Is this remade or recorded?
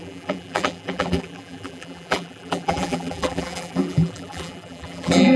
remade